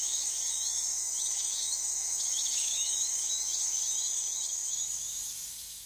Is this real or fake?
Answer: fake